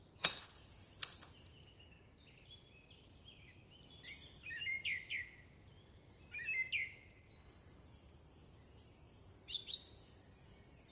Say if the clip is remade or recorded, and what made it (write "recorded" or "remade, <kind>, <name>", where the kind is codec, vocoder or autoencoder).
recorded